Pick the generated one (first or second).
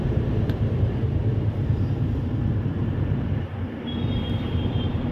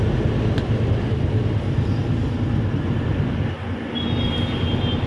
first